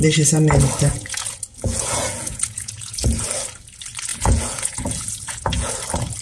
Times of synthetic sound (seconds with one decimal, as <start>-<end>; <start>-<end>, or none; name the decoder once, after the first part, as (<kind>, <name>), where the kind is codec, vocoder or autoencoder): 0.9-3.0 (vocoder, Vocos); 4.1-5.7